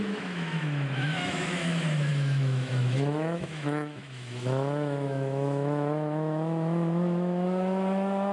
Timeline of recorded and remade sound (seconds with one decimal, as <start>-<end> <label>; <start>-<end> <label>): 0.0-8.3 remade